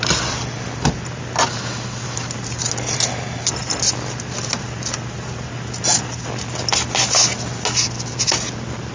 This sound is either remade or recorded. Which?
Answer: recorded